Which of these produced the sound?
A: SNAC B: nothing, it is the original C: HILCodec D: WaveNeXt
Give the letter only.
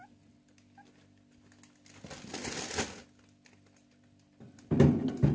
B